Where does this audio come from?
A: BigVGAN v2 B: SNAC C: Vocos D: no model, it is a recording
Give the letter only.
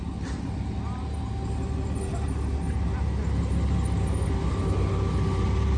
D